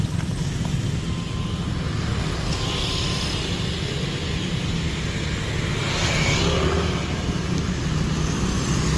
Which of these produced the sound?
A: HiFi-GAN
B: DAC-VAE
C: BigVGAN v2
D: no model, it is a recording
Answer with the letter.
D